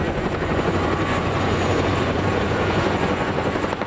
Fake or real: fake